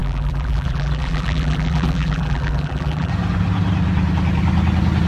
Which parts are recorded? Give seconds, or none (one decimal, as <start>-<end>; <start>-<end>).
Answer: 3.1-5.1